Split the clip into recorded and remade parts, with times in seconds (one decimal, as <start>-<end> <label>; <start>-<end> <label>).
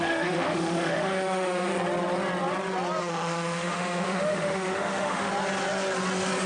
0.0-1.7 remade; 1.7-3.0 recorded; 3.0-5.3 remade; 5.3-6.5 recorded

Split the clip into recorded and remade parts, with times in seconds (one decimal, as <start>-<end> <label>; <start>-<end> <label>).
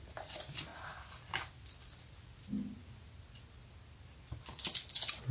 0.0-5.3 recorded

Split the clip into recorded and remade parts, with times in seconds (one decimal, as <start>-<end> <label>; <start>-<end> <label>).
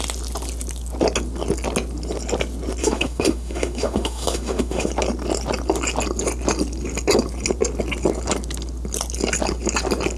0.0-2.8 recorded; 2.8-4.9 remade; 4.9-10.2 recorded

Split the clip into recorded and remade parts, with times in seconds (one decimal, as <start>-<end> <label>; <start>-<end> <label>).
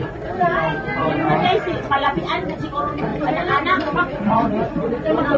0.0-0.5 remade; 0.5-1.0 recorded; 1.0-3.1 remade; 3.1-4.1 recorded; 4.1-5.4 remade